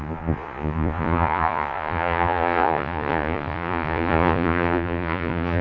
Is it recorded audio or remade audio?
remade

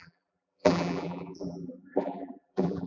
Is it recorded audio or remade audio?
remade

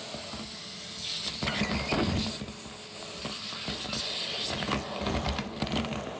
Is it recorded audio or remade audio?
recorded